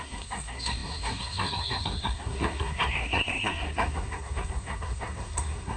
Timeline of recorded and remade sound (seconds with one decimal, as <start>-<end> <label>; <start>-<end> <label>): 0.0-5.8 remade